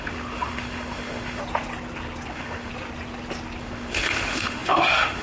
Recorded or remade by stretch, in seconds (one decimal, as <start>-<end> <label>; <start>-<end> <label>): 0.0-1.4 remade; 1.4-2.3 recorded; 2.3-2.7 remade; 2.7-3.6 recorded; 3.6-5.2 remade